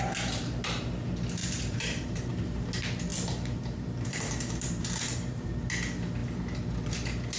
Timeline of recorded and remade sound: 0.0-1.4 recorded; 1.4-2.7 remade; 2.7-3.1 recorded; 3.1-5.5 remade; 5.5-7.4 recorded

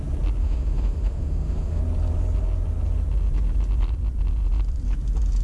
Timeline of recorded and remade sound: 0.0-0.4 recorded; 0.4-1.8 remade; 1.8-5.4 recorded

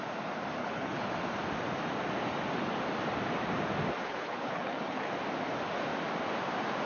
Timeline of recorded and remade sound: 0.0-0.6 recorded; 0.6-1.1 remade; 1.1-4.0 recorded; 4.0-5.1 remade; 5.1-6.9 recorded

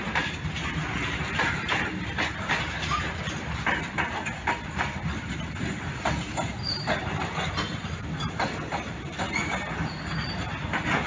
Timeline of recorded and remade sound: 0.0-11.1 recorded

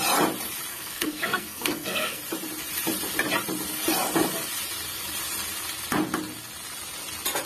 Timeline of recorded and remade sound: 0.0-0.7 recorded; 0.7-2.2 remade; 2.2-7.5 recorded

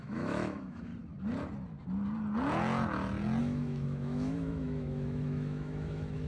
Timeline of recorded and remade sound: 0.0-0.9 remade; 0.9-3.4 recorded; 3.4-6.3 remade

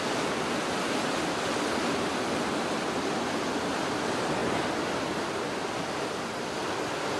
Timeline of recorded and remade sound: 0.0-7.2 recorded